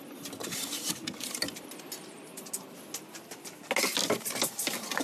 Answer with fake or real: real